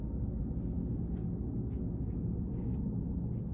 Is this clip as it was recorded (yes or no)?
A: yes